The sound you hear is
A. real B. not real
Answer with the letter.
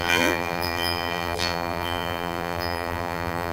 B